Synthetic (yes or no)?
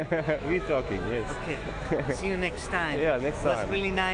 yes